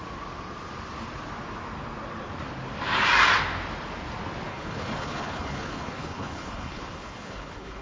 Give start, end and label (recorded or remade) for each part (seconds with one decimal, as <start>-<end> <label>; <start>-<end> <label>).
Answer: 0.0-4.5 recorded; 4.5-7.8 remade